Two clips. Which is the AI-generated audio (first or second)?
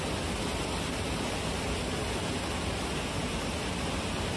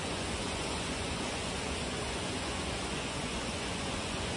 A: second